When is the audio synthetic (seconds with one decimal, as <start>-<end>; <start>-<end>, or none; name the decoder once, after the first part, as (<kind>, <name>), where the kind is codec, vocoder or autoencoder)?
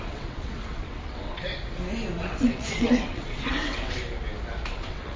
0.0-1.4 (vocoder, WaveNeXt); 2.2-4.0; 4.7-5.2